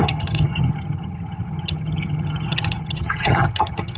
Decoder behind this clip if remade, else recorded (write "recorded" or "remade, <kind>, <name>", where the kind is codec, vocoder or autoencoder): remade, vocoder, HiFi-GAN